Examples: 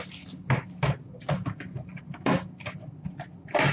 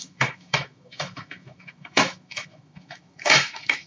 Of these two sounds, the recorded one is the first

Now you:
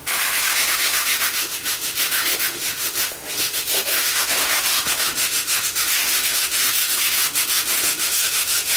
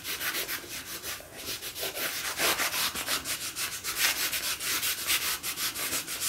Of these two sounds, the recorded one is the second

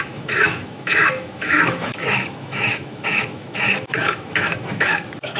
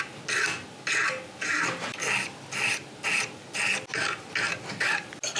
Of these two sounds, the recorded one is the second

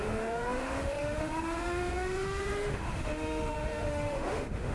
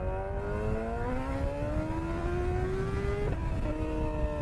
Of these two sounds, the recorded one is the second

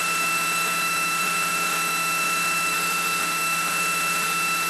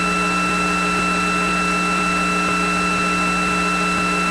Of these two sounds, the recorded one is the second